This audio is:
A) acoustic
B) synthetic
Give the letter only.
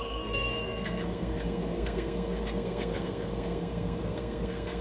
B